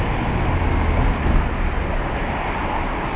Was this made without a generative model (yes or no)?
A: yes